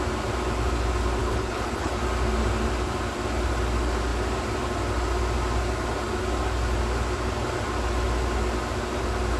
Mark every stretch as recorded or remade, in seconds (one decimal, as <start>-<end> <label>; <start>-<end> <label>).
0.0-1.2 recorded; 1.2-2.0 remade; 2.0-9.4 recorded